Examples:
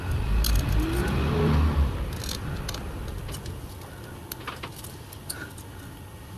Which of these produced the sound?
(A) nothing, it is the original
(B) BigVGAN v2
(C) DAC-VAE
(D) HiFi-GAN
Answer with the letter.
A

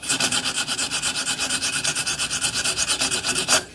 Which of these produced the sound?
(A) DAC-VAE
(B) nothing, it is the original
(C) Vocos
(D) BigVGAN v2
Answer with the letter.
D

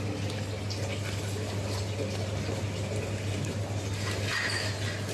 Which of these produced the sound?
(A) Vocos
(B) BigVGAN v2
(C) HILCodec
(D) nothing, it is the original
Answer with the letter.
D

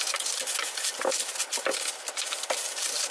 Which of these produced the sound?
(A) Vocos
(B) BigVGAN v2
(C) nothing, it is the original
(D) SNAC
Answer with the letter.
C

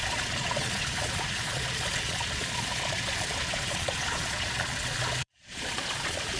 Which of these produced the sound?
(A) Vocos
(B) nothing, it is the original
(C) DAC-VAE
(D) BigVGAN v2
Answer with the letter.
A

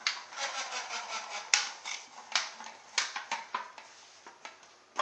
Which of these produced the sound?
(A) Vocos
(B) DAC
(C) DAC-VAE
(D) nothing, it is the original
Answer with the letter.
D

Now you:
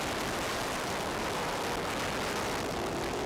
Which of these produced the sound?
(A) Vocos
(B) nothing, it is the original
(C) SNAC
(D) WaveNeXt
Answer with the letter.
B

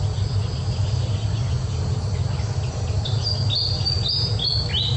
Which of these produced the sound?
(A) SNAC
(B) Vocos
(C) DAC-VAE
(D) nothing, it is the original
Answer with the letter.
D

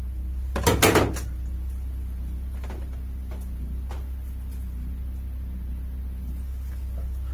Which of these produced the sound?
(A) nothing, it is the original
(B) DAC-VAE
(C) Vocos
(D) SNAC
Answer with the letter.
A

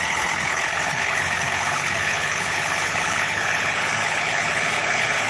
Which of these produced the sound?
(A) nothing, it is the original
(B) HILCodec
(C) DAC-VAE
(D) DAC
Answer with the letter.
B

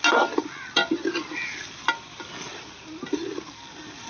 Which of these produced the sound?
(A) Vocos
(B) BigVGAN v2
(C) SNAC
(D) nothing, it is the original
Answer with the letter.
D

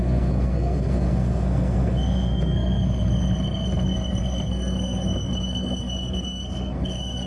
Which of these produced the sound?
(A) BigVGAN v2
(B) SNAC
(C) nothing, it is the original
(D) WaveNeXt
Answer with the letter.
B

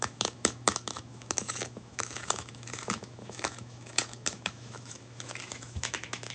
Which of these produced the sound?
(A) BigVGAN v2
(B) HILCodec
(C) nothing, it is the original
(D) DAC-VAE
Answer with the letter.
D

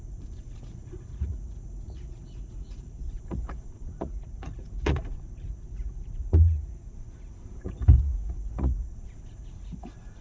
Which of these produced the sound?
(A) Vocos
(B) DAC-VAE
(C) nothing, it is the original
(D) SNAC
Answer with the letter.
A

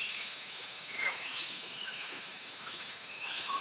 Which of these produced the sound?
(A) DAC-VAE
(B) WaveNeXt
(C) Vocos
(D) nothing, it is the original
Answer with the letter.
A